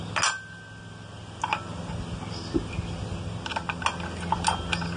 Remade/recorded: recorded